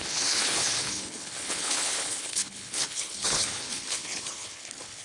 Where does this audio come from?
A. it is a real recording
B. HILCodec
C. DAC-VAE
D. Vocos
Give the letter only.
B